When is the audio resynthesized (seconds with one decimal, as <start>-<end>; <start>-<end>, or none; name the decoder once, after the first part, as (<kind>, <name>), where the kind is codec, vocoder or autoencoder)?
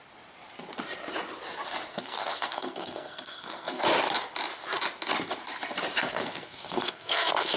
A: 1.9-3.8 (codec, SNAC); 6.0-7.6